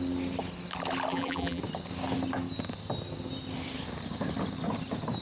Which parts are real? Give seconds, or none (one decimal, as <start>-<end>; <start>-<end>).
0.0-1.1; 1.6-5.2